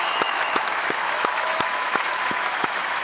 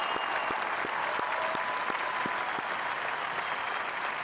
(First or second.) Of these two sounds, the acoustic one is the second